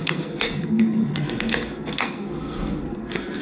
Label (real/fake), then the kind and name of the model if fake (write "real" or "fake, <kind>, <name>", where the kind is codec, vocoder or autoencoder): fake, codec, SNAC